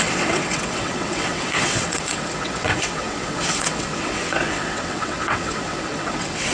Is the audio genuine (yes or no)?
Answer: no